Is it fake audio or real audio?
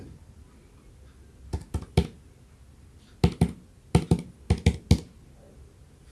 real